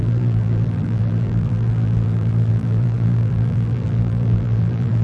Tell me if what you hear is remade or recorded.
remade